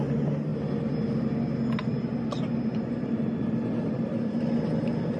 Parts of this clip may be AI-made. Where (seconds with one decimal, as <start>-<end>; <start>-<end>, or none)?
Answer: none